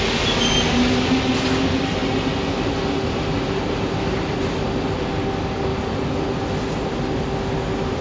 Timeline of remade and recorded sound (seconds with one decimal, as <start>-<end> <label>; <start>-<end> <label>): 0.0-8.0 recorded